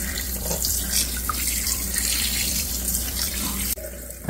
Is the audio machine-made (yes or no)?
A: yes